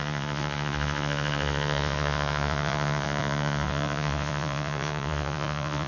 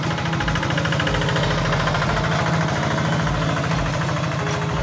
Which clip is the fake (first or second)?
first